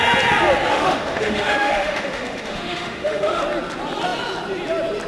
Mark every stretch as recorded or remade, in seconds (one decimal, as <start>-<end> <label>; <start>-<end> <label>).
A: 0.0-0.7 recorded; 0.7-3.4 remade; 3.4-5.1 recorded